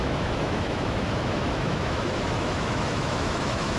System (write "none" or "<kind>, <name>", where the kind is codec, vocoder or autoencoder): autoencoder, DAC-VAE